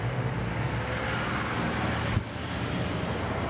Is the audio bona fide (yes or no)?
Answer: yes